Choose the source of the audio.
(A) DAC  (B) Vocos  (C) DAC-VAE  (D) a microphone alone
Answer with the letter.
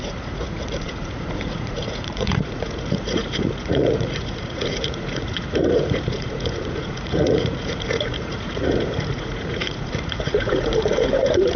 B